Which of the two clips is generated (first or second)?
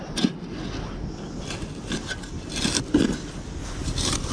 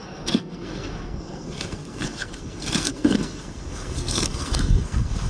second